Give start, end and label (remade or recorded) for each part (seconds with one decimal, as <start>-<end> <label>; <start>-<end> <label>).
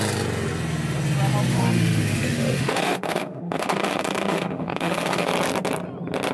0.0-1.5 recorded; 1.5-5.3 remade; 5.3-6.3 recorded